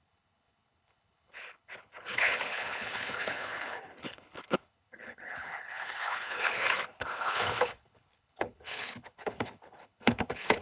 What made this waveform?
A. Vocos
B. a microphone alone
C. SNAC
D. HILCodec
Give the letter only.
D